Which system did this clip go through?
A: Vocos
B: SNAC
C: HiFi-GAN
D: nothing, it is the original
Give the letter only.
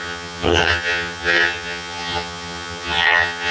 C